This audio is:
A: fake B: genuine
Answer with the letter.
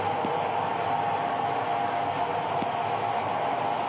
B